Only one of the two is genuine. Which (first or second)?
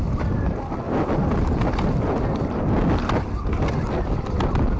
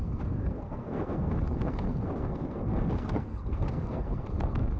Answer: first